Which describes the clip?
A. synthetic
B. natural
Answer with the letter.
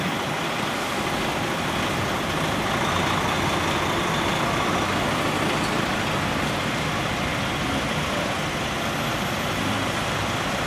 B